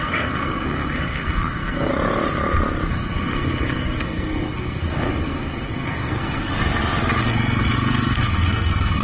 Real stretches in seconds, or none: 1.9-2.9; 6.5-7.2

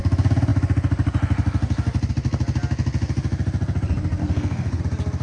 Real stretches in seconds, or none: 0.0-4.2; 4.8-5.2

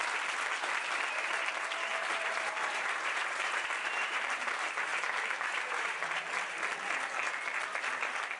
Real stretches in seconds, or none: 0.0-1.9; 6.2-8.4

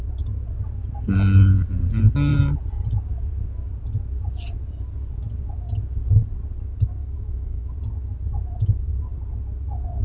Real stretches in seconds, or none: 0.0-7.0; 7.7-10.0

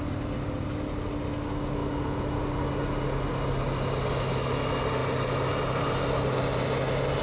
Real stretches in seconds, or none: 0.0-7.2